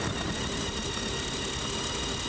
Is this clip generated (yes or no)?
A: no